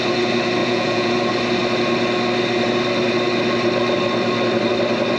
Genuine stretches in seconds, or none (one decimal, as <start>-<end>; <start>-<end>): 0.0-0.6; 1.1-5.2